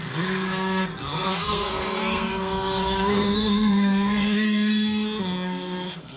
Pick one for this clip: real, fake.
fake